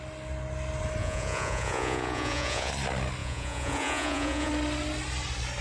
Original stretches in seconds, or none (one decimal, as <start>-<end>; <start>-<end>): 0.0-1.0; 2.7-3.2; 4.5-5.6